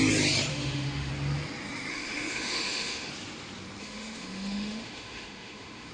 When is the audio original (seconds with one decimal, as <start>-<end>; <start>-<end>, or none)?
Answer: 0.0-0.5; 1.1-1.9; 3.1-3.8